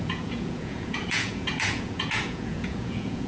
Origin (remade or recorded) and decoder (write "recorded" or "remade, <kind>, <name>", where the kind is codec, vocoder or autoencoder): remade, vocoder, Vocos